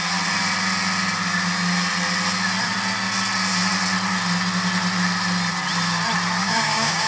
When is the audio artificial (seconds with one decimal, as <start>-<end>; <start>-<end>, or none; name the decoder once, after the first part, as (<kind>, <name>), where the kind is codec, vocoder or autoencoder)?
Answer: 6.4-7.1 (codec, DAC)